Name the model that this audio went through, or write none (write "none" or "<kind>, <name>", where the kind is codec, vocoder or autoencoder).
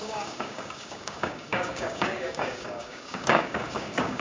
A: codec, DAC